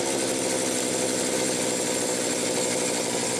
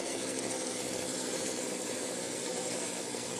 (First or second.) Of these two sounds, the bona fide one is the first